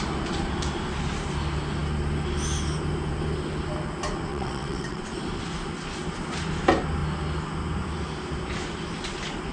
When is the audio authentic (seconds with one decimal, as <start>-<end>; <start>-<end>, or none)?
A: 0.0-4.3; 5.1-9.5